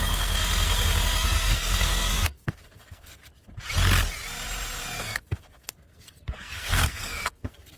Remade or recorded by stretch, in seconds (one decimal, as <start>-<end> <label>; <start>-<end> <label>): 0.0-3.2 remade; 3.2-5.0 recorded; 5.0-7.8 remade